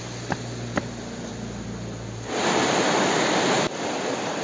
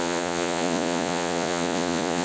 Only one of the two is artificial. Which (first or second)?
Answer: second